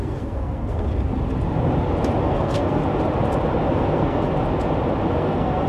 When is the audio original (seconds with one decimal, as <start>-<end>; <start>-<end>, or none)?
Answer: 0.9-2.2; 2.8-3.7; 4.3-5.1